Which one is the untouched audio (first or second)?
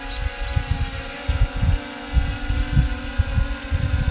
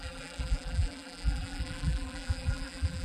first